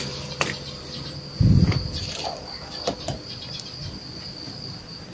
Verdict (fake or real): fake